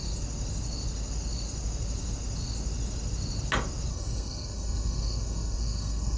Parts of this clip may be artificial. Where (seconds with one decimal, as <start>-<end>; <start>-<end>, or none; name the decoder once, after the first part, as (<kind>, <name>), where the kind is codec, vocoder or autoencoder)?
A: 3.9-6.2 (codec, SNAC)